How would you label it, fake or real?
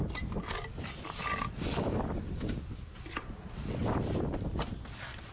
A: real